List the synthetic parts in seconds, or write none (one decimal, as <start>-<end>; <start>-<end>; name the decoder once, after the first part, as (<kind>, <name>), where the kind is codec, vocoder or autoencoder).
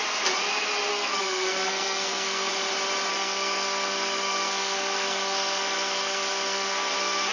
0.9-2.5 (codec, SNAC); 3.1-7.3